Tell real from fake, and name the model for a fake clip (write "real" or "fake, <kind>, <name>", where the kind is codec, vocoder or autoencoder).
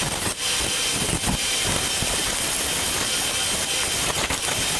real